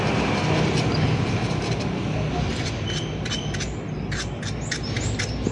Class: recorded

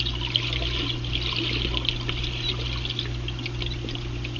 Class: recorded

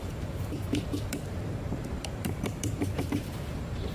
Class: remade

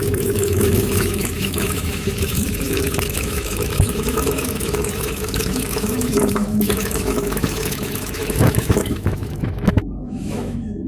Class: remade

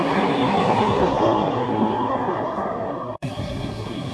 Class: remade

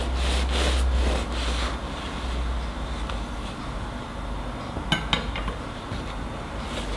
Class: recorded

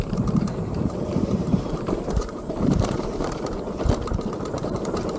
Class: remade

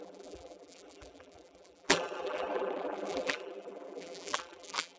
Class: remade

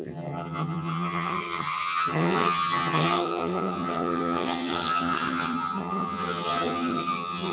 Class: remade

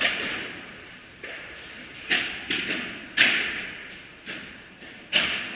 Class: recorded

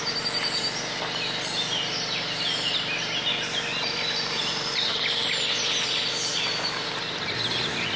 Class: recorded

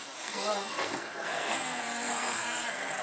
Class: remade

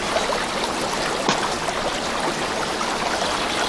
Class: recorded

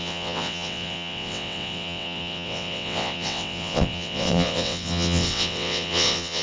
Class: remade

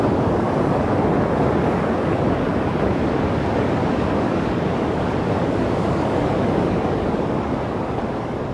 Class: remade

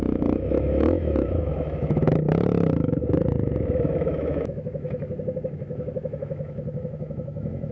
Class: remade